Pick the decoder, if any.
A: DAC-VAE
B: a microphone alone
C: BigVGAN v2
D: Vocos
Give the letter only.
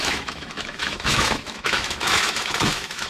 A